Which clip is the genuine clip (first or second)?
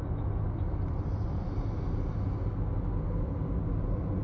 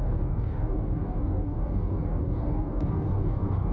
first